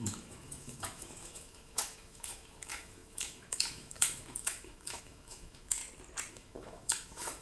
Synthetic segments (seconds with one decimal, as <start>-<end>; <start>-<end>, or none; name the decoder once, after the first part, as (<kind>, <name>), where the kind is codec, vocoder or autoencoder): 0.0-5.8 (autoencoder, DAC-VAE); 6.3-7.4